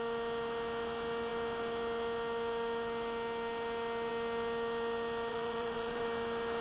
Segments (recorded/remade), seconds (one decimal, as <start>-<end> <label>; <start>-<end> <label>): 0.0-5.3 recorded; 5.3-6.0 remade; 6.0-6.6 recorded